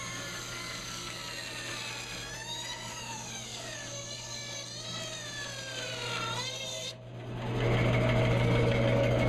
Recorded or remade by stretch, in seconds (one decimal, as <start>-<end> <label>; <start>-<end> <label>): 0.0-1.2 remade; 1.2-2.9 recorded; 2.9-4.4 remade; 4.4-8.3 recorded; 8.3-9.3 remade